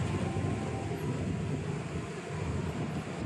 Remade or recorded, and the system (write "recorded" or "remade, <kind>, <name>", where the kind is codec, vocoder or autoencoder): recorded